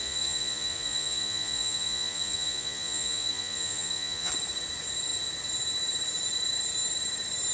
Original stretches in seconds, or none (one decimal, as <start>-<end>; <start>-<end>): 4.3-7.5